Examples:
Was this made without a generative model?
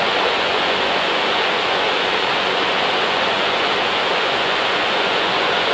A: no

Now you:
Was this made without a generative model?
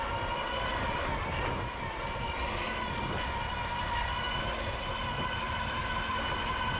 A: yes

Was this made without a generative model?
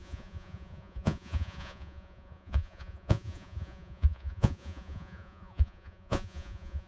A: no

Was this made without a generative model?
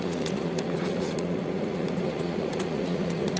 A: no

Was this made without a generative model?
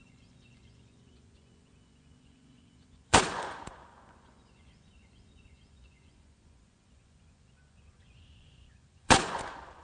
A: no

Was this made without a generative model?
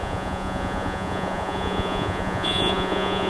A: no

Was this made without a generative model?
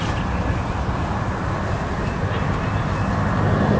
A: yes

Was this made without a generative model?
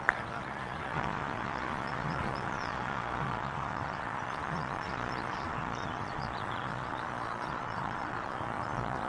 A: no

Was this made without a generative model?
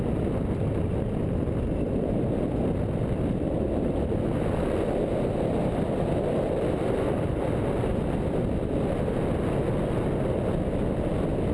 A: yes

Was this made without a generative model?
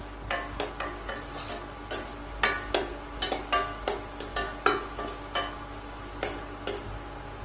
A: yes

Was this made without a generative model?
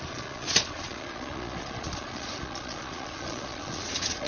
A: no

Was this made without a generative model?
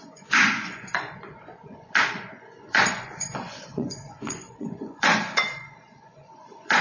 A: no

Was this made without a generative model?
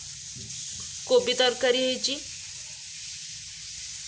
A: yes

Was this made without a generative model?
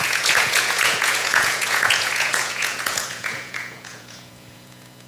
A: no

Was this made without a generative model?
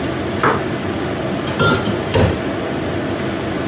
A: yes